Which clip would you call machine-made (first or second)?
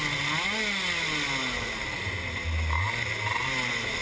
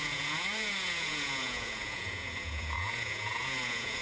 second